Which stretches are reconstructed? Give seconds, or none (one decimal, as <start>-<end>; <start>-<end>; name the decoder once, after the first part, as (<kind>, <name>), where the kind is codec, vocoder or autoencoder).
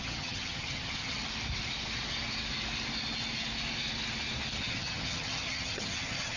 0.0-1.2 (vocoder, HiFi-GAN); 4.6-6.4